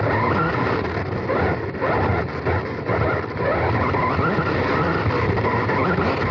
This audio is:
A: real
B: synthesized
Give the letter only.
A